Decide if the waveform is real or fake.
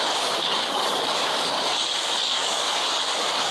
fake